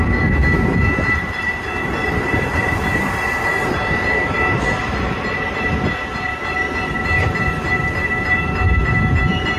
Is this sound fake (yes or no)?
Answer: yes